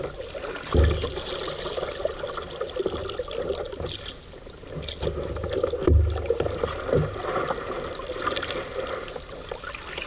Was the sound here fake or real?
real